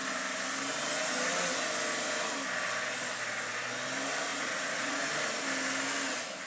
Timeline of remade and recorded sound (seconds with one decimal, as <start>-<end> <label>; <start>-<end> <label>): 0.0-4.3 recorded; 4.3-5.1 remade; 5.1-6.5 recorded